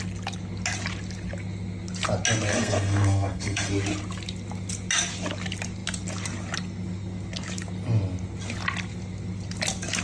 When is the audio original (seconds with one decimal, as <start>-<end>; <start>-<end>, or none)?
0.0-2.5; 3.7-10.0